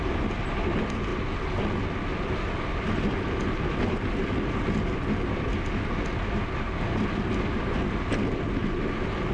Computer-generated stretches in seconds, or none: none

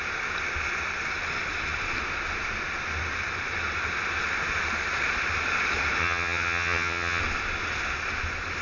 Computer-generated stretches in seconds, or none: 6.0-7.2

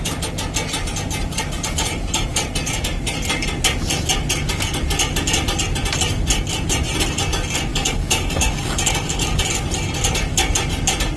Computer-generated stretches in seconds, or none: 7.7-9.5

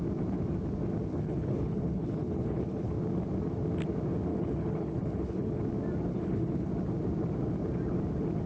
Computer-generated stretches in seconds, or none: 1.1-2.9; 4.3-5.6; 6.1-6.7

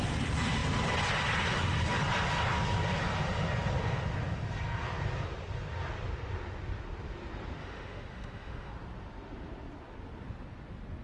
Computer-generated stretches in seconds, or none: 7.6-8.7